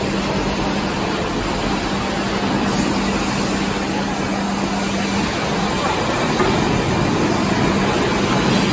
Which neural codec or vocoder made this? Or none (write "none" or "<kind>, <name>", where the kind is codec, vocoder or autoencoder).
none